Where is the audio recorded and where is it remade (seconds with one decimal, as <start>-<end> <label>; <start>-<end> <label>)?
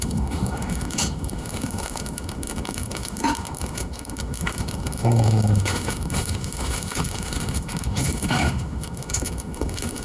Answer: 0.0-10.0 remade